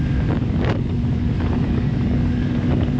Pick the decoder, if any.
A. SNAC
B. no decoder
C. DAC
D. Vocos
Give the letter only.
C